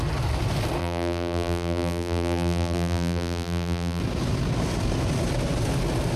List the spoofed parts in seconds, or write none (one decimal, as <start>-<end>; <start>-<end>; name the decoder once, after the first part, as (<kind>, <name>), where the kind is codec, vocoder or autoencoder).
0.8-4.0 (vocoder, BigVGAN v2)